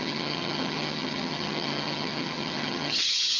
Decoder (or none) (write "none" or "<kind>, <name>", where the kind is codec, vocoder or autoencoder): vocoder, HiFi-GAN